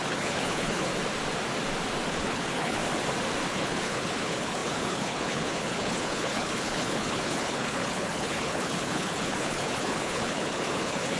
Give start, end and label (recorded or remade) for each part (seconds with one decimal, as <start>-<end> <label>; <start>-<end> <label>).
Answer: 0.0-0.9 remade; 0.9-2.1 recorded; 2.1-2.8 remade; 2.8-3.5 recorded; 3.5-11.2 remade